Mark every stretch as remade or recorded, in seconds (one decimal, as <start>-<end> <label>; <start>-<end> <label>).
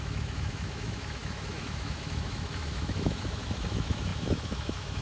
0.0-5.0 remade